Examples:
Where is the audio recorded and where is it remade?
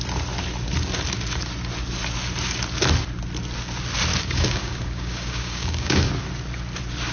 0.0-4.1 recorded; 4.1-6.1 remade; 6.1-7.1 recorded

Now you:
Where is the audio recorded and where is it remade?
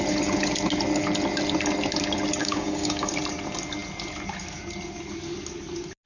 0.0-2.4 recorded; 2.4-3.1 remade; 3.1-6.1 recorded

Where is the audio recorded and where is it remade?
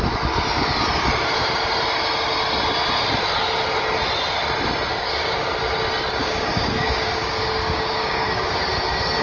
0.0-4.9 recorded; 4.9-5.5 remade; 5.5-6.2 recorded; 6.2-8.7 remade; 8.7-9.2 recorded